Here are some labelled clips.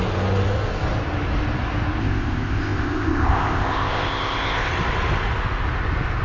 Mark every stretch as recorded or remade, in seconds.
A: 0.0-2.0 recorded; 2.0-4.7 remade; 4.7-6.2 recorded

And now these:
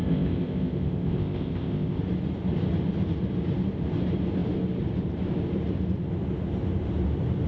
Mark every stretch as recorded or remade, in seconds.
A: 0.0-2.0 remade; 2.0-7.5 recorded

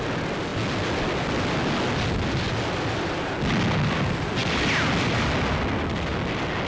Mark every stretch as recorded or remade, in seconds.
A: 0.0-6.7 recorded

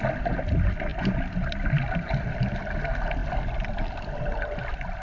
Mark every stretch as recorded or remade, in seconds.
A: 0.0-5.0 recorded

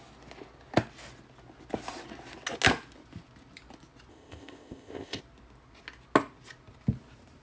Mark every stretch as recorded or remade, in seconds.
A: 0.0-4.1 recorded; 4.1-5.2 remade; 5.2-7.4 recorded

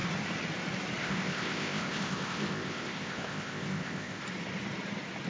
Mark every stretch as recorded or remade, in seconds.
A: 0.0-1.0 recorded; 1.0-4.2 remade; 4.2-5.3 recorded